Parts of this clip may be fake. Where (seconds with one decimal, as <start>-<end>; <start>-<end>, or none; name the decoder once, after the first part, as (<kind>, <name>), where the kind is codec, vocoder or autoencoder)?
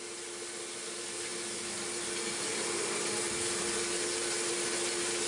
none